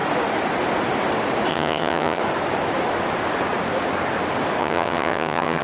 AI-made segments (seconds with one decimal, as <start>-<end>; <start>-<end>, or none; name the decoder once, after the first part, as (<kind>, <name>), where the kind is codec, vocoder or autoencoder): 1.5-2.2 (vocoder, HiFi-GAN); 4.6-5.6